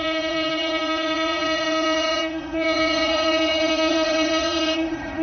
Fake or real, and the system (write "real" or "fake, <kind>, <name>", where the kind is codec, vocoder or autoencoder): fake, vocoder, Vocos